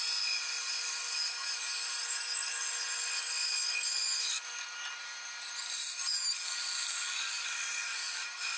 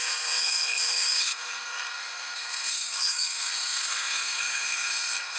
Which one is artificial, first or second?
second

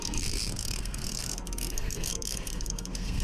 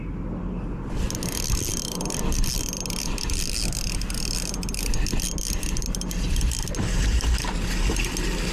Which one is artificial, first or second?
first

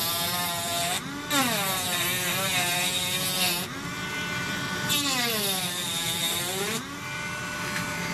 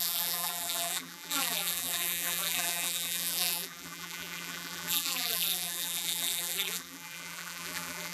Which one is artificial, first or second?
second